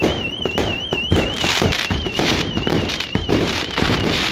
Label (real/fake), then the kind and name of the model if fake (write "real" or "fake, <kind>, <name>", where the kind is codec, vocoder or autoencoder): fake, vocoder, BigVGAN v2